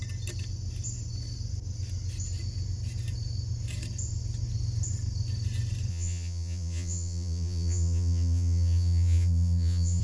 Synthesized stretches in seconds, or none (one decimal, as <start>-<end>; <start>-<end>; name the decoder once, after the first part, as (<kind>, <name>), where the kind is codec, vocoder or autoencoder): 5.9-10.0 (vocoder, Vocos)